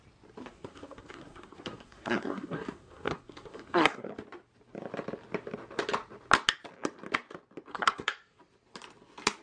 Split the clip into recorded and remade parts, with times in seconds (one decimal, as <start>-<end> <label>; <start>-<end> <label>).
0.0-0.4 recorded; 0.4-4.1 remade; 4.1-7.7 recorded; 7.7-8.4 remade; 8.4-9.4 recorded